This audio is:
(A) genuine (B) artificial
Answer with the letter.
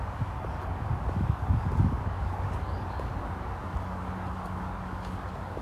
B